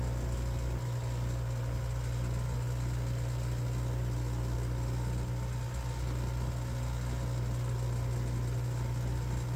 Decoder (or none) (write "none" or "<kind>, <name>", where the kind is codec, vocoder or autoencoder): none